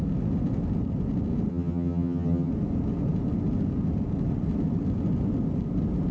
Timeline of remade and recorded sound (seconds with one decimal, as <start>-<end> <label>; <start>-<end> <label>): 0.0-1.5 recorded; 1.5-2.5 remade; 2.5-6.1 recorded